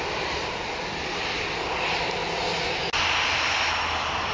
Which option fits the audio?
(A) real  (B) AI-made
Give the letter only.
A